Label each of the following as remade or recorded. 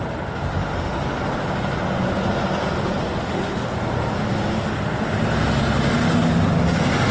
recorded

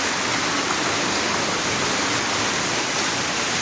recorded